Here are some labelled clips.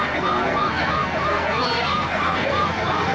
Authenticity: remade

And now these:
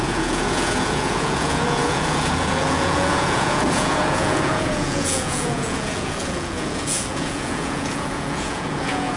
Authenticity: remade